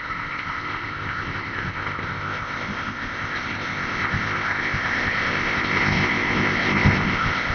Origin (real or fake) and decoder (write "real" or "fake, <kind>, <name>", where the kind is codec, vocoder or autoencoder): fake, codec, ZipCodec